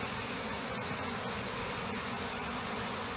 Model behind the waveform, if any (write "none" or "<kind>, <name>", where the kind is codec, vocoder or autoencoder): vocoder, Vocos